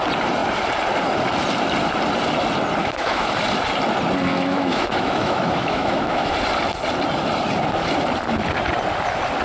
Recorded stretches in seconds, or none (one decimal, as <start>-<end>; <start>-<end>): 0.0-2.8; 3.3-4.3; 6.3-9.4

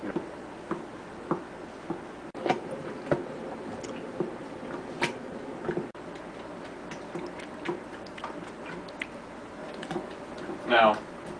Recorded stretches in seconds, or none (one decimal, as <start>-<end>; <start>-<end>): 0.0-9.6; 10.8-11.4

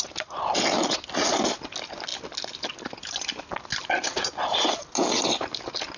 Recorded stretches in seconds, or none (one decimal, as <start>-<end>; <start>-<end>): 0.0-6.0

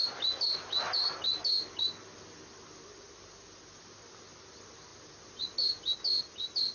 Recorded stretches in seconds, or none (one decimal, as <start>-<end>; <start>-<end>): 0.0-6.7

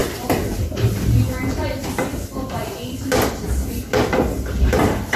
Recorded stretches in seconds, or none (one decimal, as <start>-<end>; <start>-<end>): 1.9-5.2